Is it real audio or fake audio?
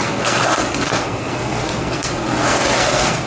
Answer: fake